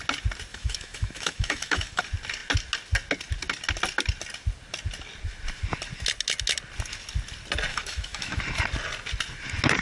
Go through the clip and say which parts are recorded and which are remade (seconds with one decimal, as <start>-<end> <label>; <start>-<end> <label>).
0.0-0.5 recorded; 0.5-2.0 remade; 2.0-7.7 recorded; 7.7-8.4 remade; 8.4-9.8 recorded